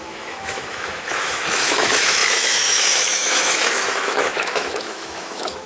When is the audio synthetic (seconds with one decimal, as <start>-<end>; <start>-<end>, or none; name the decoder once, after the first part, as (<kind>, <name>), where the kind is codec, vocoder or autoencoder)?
0.0-5.7 (autoencoder, DAC-VAE)